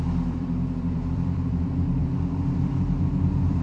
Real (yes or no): no